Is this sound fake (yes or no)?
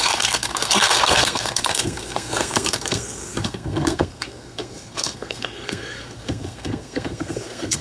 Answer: yes